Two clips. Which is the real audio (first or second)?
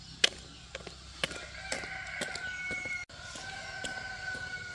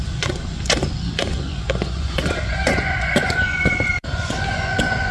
first